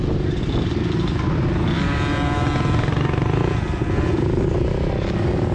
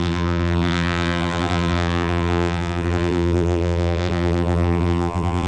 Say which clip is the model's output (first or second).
second